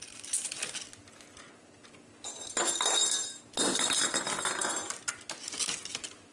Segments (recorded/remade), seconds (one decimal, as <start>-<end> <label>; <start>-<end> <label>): 0.0-6.3 recorded